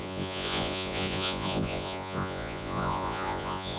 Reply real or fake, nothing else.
fake